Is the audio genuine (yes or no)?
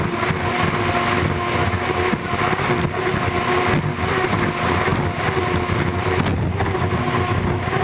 yes